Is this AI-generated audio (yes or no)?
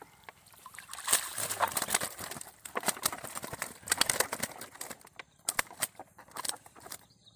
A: no